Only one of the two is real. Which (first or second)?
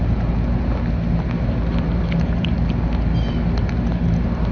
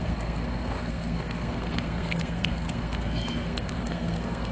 first